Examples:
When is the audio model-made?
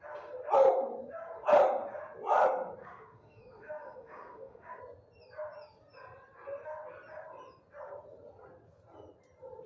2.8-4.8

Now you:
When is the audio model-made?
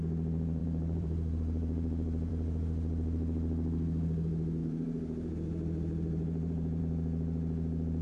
0.6-2.3; 4.6-6.8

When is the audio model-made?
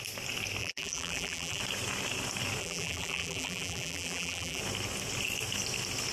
0.6-1.6; 2.6-4.6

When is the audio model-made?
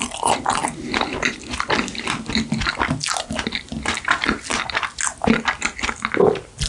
none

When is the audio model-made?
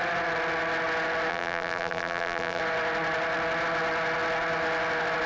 1.3-2.6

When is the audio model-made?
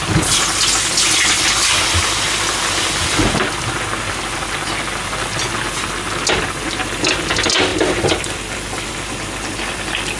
none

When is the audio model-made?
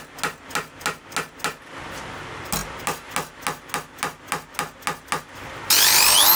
none